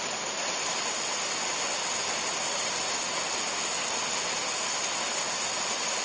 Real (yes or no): yes